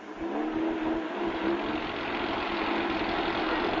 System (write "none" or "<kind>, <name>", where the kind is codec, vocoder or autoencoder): none